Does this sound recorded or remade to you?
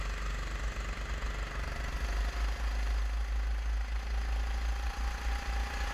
recorded